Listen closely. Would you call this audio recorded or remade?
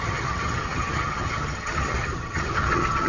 remade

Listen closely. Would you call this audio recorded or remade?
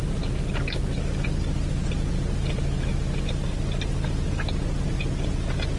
recorded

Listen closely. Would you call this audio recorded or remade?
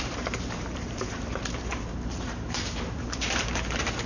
remade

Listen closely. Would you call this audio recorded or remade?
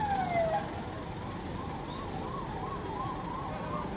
recorded